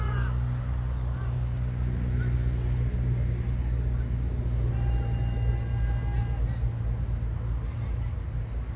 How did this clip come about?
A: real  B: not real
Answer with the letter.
A